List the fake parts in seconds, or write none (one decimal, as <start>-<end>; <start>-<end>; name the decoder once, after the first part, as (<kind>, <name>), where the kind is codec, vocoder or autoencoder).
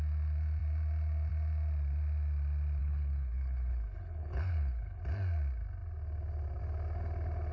2.8-5.0 (codec, HILCodec)